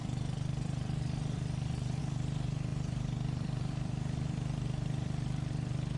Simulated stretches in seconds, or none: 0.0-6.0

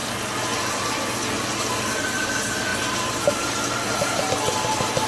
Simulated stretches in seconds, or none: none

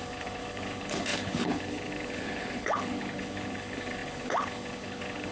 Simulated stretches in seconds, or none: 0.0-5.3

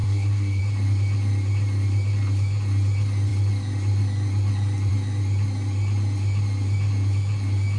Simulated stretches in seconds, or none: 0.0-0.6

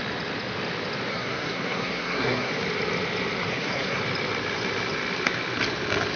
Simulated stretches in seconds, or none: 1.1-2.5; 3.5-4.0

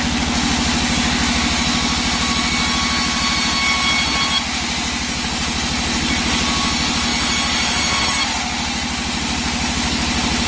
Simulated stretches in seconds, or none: none